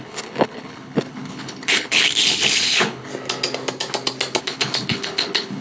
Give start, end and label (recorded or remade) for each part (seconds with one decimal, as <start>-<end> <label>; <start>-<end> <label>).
0.0-3.1 remade; 3.1-4.4 recorded; 4.4-5.6 remade

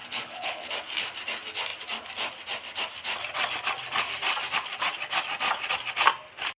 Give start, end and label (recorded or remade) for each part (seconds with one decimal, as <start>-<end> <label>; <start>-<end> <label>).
0.0-0.7 remade; 0.7-6.6 recorded